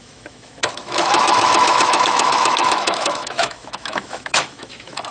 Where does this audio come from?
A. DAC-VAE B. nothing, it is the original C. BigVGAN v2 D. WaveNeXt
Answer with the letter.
A